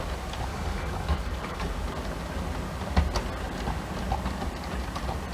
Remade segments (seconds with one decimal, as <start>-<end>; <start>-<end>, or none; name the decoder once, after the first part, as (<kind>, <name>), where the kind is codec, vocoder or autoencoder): 0.5-1.8 (codec, DAC)